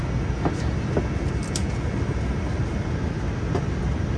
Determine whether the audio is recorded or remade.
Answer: recorded